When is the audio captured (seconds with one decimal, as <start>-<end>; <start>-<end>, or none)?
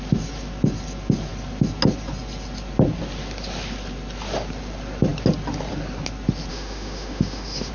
0.0-6.5